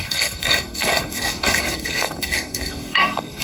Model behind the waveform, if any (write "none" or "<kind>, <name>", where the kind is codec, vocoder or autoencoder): codec, SNAC